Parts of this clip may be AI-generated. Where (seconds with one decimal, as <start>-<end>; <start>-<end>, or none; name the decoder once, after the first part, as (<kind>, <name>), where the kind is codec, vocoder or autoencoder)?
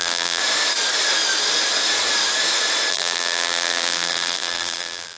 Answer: 0.0-0.4 (vocoder, BigVGAN v2); 2.9-5.2